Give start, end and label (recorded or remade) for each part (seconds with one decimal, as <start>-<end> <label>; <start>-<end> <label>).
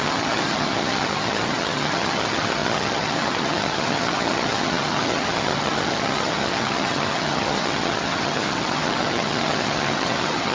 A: 0.0-10.5 remade